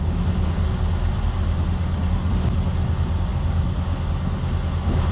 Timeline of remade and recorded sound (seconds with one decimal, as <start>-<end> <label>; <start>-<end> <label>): 0.0-5.1 recorded